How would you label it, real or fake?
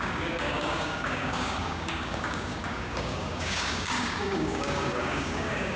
fake